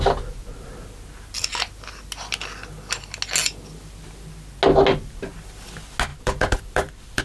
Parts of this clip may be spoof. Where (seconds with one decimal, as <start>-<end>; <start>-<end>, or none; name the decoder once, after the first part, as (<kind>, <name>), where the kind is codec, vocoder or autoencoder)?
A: 6.1-7.2 (vocoder, BigVGAN v2)